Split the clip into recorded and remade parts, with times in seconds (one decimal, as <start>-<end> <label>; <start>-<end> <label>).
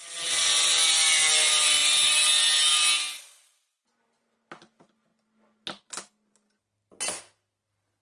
0.0-8.0 recorded